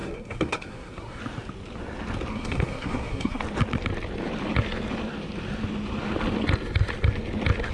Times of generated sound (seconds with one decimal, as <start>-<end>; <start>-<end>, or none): 0.0-1.2; 2.3-3.4